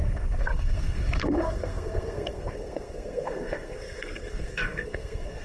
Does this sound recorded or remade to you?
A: remade